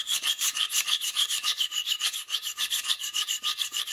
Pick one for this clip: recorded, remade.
remade